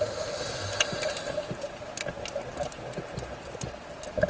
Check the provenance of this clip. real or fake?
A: real